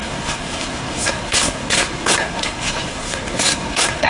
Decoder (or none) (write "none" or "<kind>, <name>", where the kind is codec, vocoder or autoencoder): codec, SNAC